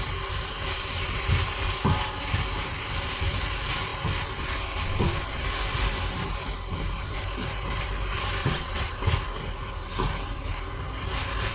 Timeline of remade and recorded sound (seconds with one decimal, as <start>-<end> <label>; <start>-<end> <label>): 0.0-8.4 recorded; 8.4-8.9 remade; 8.9-11.5 recorded